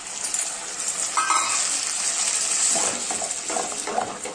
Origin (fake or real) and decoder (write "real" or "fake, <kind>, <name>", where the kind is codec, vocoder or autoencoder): real